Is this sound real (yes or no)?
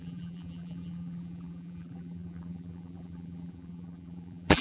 no